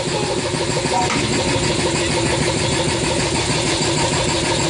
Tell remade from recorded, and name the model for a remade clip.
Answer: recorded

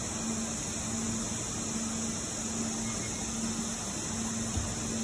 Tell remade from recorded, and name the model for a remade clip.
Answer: recorded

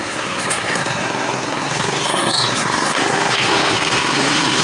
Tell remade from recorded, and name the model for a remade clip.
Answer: remade, codec, SNAC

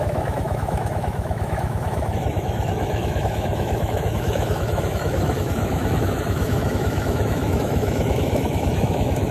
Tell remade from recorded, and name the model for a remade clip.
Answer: remade, autoencoder, DAC-VAE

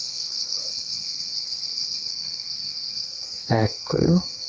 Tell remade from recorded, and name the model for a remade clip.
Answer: remade, codec, SNAC